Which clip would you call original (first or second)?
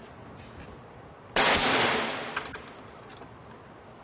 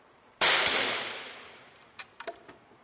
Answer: first